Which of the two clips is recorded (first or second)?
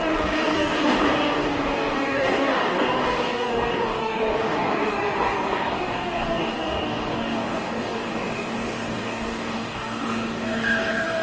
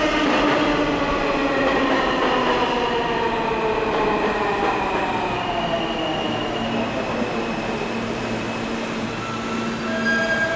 second